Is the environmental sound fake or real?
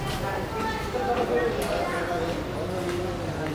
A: real